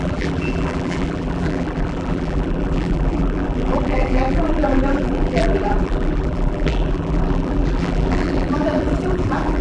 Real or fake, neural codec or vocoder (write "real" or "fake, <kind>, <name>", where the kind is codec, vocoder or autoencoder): fake, vocoder, BigVGAN v2